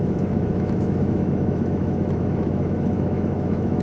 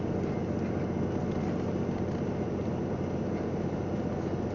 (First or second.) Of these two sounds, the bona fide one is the second